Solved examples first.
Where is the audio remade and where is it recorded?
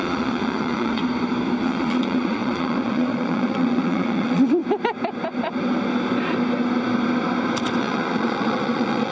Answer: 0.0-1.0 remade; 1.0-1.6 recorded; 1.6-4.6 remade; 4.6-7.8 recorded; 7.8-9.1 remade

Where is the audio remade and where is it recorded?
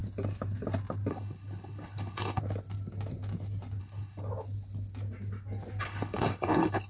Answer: 0.0-1.1 recorded; 1.1-2.4 remade; 2.4-3.8 recorded; 3.8-4.2 remade; 4.2-5.8 recorded; 5.8-6.9 remade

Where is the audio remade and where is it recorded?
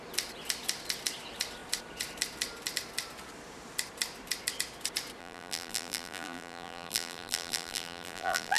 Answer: 0.0-5.2 recorded; 5.2-8.6 remade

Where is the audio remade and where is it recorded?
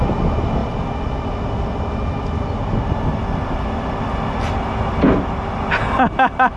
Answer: 0.0-6.6 recorded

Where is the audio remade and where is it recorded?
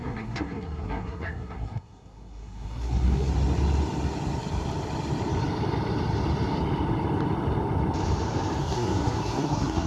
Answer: 0.0-3.3 remade; 3.3-8.6 recorded; 8.6-9.9 remade